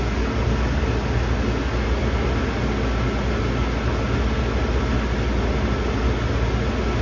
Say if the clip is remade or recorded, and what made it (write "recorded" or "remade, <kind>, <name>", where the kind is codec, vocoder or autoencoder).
recorded